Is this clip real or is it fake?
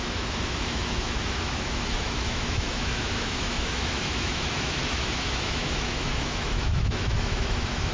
fake